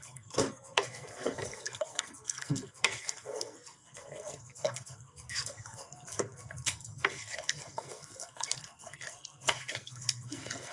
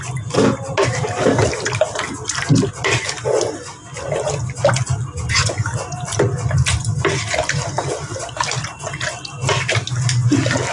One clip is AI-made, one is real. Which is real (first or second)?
second